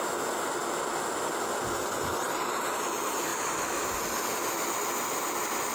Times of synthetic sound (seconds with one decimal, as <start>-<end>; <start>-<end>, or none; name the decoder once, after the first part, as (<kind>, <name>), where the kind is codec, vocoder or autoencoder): none